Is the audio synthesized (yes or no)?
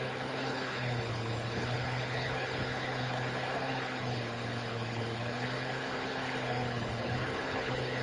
yes